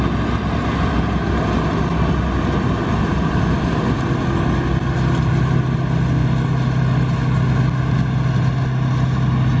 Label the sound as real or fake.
real